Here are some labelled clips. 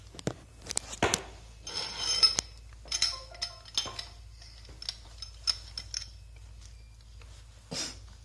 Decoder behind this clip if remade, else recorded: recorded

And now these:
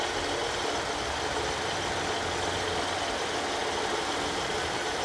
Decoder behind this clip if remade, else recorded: recorded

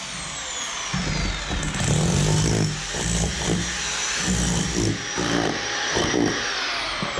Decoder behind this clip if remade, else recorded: recorded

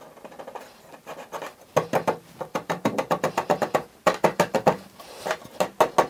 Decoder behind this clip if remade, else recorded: recorded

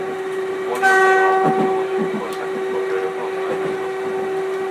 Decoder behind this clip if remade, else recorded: recorded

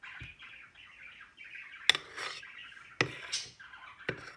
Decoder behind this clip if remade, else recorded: recorded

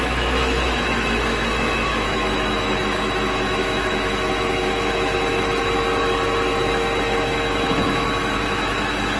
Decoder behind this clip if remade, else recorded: remade, autoencoder, DAC-VAE